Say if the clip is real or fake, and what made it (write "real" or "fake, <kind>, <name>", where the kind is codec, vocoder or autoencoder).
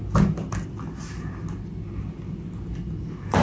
real